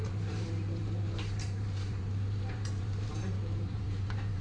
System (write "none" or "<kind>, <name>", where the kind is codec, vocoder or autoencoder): vocoder, BigVGAN v2